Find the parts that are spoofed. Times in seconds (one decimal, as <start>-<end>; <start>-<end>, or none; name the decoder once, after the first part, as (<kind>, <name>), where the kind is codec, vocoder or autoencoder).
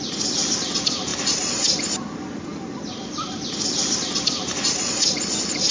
none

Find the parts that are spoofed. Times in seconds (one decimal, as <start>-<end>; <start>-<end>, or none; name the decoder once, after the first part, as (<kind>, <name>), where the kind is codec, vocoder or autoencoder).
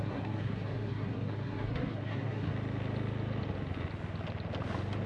0.0-2.5 (codec, SNAC)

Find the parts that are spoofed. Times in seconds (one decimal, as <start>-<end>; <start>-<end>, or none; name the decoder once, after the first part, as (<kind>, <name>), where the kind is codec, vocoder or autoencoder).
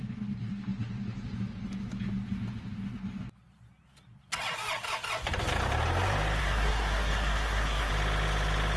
6.4-7.9 (codec, SNAC)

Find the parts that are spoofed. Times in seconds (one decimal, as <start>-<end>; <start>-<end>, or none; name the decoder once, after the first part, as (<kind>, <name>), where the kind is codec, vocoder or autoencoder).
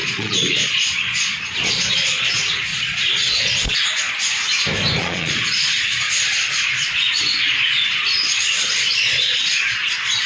0.0-2.3 (vocoder, Vocos); 2.7-4.1; 5.0-9.6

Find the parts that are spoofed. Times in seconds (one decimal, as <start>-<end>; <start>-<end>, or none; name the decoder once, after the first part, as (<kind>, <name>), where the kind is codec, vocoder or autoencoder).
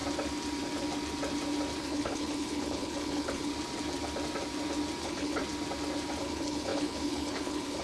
1.8-3.5 (codec, HILCodec); 5.0-5.4; 6.2-7.8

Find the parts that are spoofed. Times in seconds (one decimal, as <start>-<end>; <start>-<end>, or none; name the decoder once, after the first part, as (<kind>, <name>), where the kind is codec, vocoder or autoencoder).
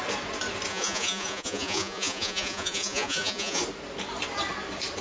0.7-3.6 (vocoder, Vocos)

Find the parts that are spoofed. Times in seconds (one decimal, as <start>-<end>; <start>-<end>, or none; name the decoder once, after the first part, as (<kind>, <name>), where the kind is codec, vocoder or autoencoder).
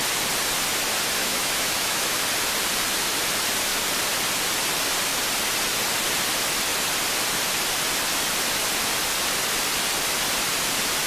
1.2-2.1 (autoencoder, DAC-VAE)